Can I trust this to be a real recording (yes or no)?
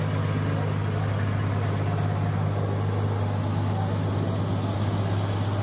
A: yes